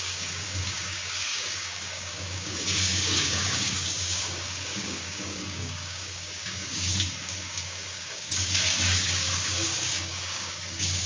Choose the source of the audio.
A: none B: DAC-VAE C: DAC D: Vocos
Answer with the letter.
C